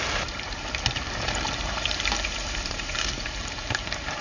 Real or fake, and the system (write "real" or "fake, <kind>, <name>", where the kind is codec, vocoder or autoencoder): fake, vocoder, BigVGAN v2